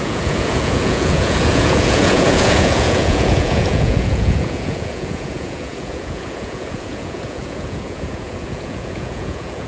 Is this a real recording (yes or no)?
no